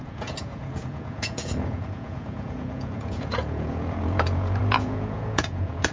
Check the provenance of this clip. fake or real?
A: fake